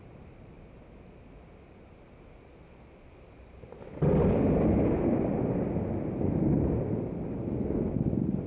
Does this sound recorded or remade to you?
recorded